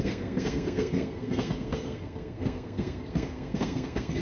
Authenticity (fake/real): fake